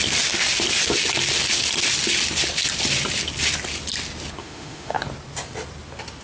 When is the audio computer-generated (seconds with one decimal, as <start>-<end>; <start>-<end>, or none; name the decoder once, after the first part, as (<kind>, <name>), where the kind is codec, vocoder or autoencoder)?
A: 4.4-5.0 (autoencoder, DAC-VAE)